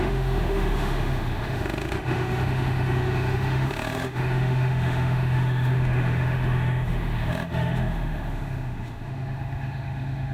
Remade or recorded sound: remade